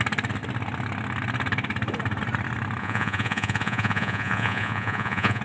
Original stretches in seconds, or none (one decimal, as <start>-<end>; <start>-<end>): 0.0-2.8